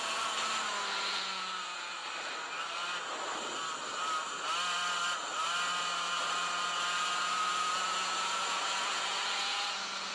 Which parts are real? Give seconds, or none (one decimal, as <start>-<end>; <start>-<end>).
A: 2.0-5.8